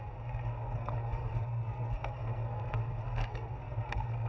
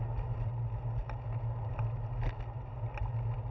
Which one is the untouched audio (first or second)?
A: second